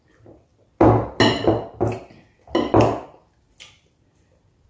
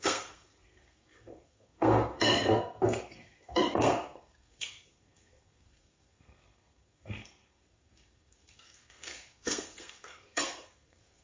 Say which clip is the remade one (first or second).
second